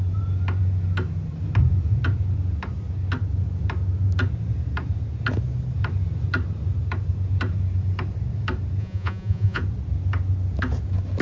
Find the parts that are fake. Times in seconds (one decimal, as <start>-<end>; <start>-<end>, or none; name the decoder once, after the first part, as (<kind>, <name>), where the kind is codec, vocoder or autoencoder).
8.8-9.6 (vocoder, Vocos)

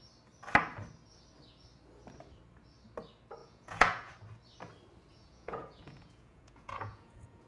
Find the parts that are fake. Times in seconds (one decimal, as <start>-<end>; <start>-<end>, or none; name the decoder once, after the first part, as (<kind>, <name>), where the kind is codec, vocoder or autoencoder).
3.4-4.1 (vocoder, Vocos); 5.1-7.5

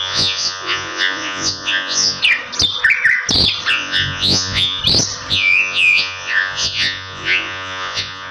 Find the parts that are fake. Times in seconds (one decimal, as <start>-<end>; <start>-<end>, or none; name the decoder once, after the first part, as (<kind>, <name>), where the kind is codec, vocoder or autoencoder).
0.0-2.2 (vocoder, Vocos); 3.7-4.8; 5.3-8.3

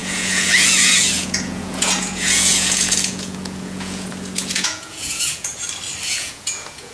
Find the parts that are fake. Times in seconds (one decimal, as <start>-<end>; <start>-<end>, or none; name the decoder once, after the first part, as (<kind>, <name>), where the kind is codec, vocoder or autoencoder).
0.0-5.5 (vocoder, Vocos); 6.1-6.9

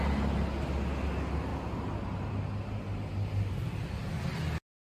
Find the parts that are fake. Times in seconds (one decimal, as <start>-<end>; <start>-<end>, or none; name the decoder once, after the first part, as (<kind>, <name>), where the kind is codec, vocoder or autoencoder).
none

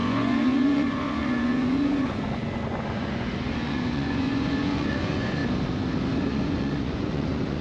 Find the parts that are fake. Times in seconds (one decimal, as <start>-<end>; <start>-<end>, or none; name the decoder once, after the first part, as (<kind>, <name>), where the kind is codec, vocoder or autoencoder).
0.0-5.4 (vocoder, Vocos); 6.2-7.6

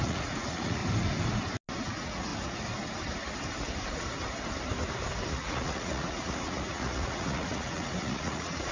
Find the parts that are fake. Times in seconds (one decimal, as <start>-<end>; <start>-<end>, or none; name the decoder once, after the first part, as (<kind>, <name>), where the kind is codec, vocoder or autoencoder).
0.0-0.8 (vocoder, Vocos); 1.8-2.3; 5.3-8.7

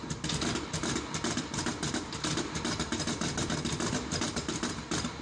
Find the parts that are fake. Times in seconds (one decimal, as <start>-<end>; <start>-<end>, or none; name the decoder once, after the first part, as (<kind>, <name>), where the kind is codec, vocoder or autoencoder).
none